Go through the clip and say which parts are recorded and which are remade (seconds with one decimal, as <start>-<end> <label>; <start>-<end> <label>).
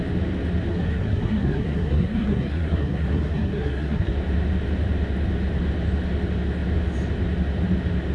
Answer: 0.0-0.7 recorded; 0.7-4.1 remade; 4.1-8.1 recorded